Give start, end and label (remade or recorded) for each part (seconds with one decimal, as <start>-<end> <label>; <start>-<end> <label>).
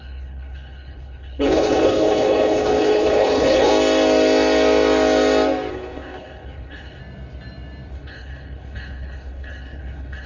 0.0-3.7 remade; 3.7-5.7 recorded; 5.7-7.0 remade; 7.0-7.9 recorded; 7.9-10.3 remade